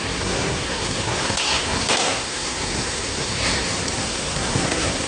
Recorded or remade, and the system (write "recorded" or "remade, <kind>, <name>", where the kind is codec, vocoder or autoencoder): remade, codec, SNAC